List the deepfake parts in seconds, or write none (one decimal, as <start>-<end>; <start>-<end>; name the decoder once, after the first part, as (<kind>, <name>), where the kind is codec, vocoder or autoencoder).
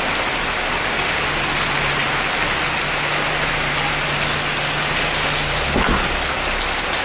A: none